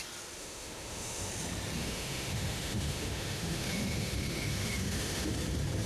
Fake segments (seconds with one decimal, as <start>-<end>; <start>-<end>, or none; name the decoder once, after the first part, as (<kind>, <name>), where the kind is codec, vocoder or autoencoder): 0.4-1.3 (autoencoder, DAC-VAE); 1.8-5.3